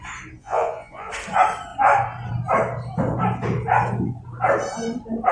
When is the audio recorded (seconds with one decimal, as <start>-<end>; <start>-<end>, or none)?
0.0-0.4; 1.1-5.3